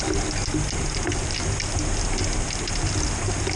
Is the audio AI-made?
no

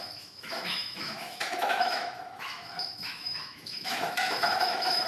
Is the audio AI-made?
yes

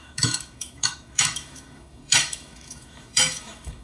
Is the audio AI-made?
yes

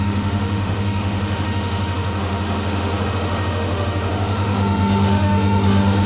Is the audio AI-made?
yes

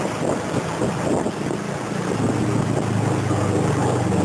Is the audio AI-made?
no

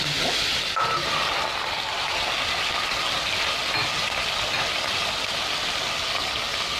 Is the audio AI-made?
no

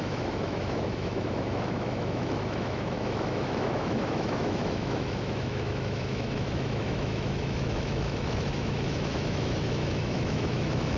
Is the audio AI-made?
yes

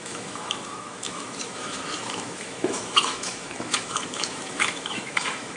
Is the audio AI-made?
yes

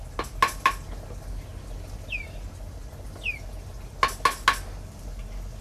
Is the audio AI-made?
no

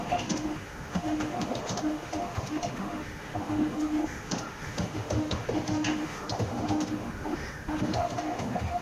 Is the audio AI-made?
yes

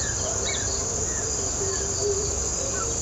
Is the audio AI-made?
no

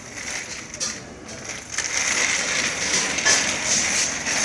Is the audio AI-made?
no